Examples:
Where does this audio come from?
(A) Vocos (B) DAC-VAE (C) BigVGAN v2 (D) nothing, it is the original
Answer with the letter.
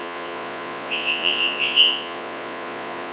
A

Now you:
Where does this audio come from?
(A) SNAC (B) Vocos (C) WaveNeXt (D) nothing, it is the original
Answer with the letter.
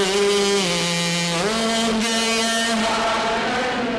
D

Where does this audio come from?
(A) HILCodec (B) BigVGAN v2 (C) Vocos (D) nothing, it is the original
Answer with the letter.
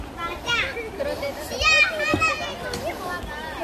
D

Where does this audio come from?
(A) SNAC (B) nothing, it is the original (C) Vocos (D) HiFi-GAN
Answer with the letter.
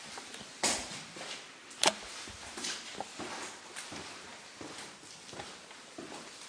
B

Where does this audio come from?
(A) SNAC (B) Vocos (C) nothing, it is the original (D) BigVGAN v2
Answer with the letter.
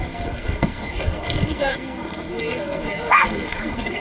A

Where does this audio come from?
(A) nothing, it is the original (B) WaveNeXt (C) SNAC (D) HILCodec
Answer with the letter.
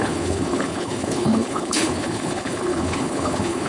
D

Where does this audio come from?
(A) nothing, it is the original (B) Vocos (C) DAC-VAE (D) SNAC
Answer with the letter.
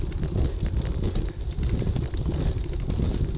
A